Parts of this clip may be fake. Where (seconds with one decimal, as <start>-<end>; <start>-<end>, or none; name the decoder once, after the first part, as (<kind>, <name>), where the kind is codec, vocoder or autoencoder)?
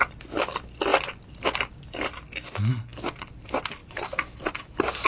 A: 3.8-5.1 (vocoder, BigVGAN v2)